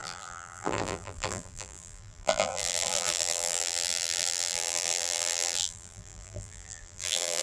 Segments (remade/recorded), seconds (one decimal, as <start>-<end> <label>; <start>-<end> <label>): 0.0-7.4 remade